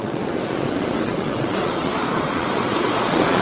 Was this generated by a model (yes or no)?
yes